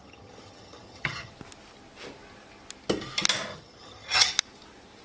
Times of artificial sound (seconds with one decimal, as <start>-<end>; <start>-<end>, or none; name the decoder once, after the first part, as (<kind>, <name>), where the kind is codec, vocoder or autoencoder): 0.0-1.3 (vocoder, HiFi-GAN); 3.5-4.3